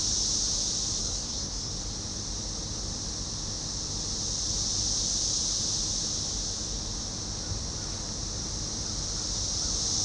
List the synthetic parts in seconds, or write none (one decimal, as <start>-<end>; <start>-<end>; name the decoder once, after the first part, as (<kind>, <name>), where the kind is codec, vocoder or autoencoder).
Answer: 1.0-1.7 (codec, SNAC)